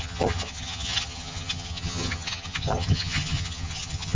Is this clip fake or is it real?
fake